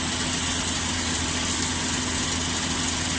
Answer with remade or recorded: recorded